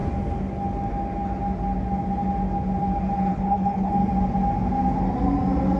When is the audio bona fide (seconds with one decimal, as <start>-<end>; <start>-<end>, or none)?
0.0-3.3; 3.9-5.8